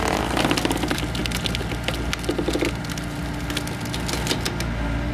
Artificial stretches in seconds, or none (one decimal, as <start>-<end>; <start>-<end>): none